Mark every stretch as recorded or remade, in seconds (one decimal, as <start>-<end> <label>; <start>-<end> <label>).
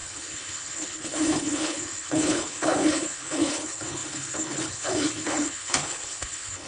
0.0-6.7 remade